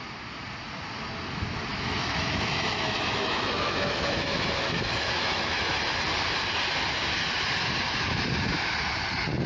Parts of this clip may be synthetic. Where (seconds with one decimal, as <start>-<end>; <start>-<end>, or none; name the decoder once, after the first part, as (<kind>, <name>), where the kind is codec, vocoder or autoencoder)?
1.7-5.7 (autoencoder, DAC-VAE)